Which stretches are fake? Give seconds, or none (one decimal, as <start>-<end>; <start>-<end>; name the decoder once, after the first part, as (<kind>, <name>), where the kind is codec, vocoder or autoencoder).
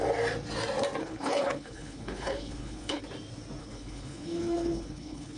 1.0-3.0 (codec, HILCodec); 3.6-5.4